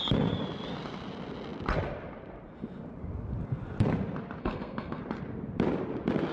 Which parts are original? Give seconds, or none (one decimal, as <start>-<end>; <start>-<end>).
0.0-4.4; 5.0-6.3